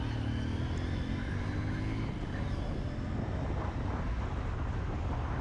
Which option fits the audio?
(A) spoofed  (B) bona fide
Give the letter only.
B